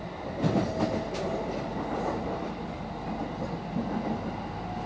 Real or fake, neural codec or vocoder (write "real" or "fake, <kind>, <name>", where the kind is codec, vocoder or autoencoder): real